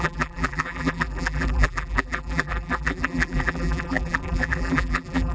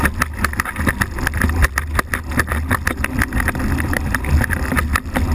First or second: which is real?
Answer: second